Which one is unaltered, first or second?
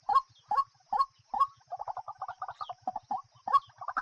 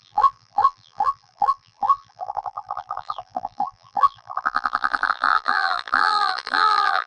first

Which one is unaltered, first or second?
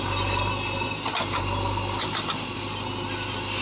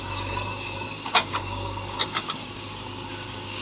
first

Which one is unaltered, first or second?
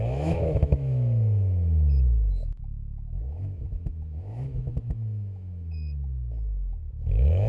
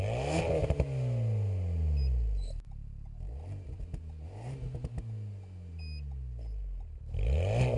second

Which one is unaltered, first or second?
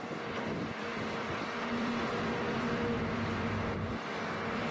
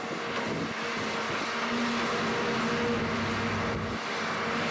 second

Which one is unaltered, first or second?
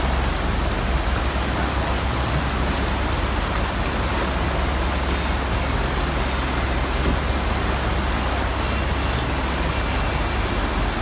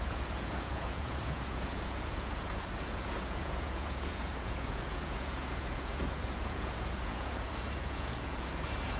first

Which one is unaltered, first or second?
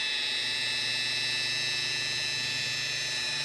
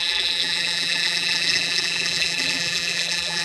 first